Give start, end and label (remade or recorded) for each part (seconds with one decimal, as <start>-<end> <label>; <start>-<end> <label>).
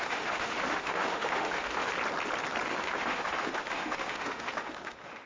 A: 0.0-1.9 remade; 1.9-2.7 recorded; 2.7-5.3 remade